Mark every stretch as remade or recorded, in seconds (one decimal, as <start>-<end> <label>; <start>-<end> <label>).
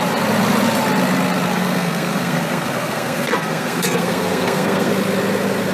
0.0-1.5 recorded; 1.5-4.9 remade; 4.9-5.7 recorded